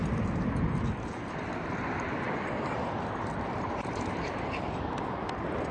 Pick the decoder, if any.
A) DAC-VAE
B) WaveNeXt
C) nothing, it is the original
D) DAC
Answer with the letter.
C